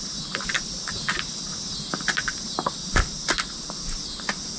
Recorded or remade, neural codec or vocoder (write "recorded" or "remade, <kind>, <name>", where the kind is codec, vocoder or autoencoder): recorded